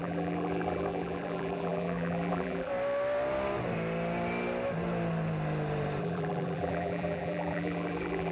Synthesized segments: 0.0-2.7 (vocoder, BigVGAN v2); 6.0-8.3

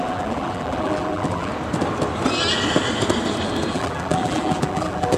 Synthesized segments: 0.0-1.5 (vocoder, BigVGAN v2); 3.7-5.2

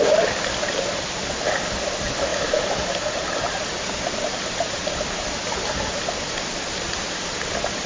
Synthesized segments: none

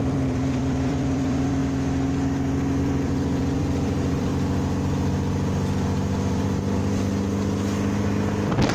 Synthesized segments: 0.0-1.6 (vocoder, BigVGAN v2); 2.8-4.3

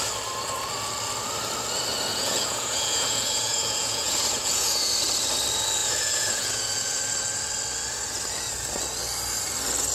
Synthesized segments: 2.1-4.9 (vocoder, Vocos); 5.8-7.0

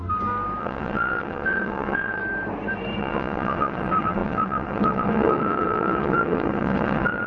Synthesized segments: 0.6-2.2 (vocoder, WaveNeXt); 3.0-7.3

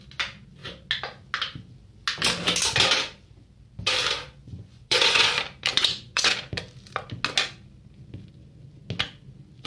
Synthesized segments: 4.4-5.3 (vocoder, Vocos); 5.7-6.6